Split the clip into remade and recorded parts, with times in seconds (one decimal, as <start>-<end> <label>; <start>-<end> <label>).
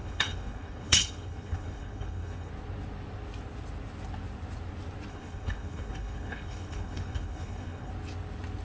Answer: 0.0-2.5 remade; 2.5-5.1 recorded; 5.1-7.9 remade; 7.9-8.6 recorded